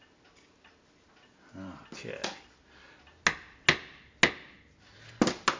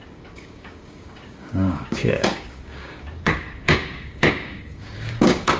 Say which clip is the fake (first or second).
second